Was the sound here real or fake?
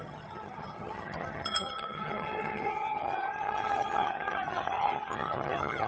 fake